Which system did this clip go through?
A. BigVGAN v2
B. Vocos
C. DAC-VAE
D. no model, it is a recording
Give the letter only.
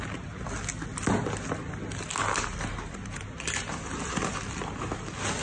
D